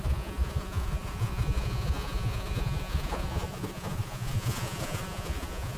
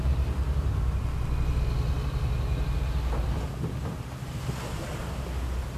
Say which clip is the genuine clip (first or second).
second